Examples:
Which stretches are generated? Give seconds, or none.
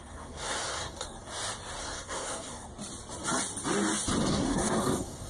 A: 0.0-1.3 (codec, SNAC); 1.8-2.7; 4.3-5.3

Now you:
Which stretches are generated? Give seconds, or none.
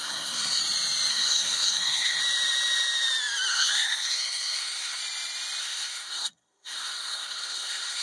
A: 0.0-0.6 (codec, SNAC); 1.1-2.2; 3.5-5.0; 5.6-8.0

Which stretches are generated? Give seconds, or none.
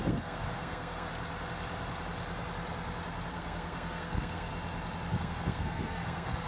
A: 0.0-1.1 (codec, SNAC); 3.3-4.5; 5.1-6.5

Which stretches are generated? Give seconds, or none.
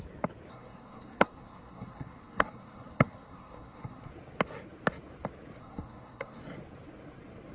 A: 0.5-4.1 (codec, SNAC); 5.6-6.4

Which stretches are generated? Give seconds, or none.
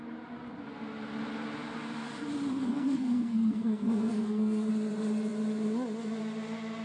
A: 2.6-4.7 (codec, SNAC)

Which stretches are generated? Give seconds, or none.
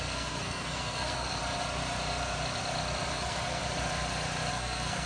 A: 0.0-1.4 (codec, SNAC); 3.1-3.6; 4.5-5.1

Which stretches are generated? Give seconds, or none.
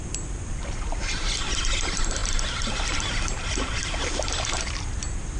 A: none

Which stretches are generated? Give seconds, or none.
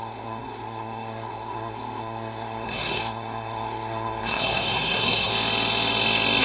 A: 0.0-5.3 (codec, SNAC)